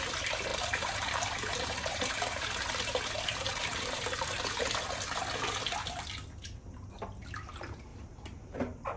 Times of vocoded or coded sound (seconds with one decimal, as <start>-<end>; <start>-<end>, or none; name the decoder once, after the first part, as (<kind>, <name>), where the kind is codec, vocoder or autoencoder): 0.5-2.7 (vocoder, BigVGAN v2); 3.3-4.6; 7.9-9.0